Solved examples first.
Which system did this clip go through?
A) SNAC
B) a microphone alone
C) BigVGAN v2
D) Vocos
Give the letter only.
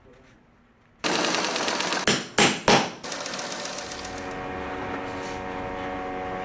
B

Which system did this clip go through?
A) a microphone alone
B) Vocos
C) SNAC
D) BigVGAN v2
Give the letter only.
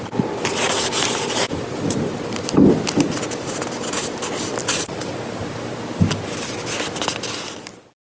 A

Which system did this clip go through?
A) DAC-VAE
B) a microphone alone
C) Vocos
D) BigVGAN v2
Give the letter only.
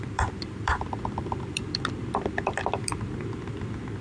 D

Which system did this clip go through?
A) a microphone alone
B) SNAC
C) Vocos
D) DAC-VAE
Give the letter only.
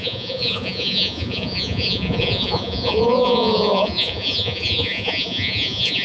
C